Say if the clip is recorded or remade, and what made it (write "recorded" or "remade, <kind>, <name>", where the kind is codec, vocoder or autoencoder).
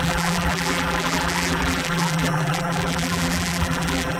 remade, vocoder, BigVGAN v2